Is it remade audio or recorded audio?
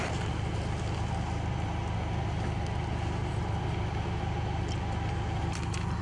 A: recorded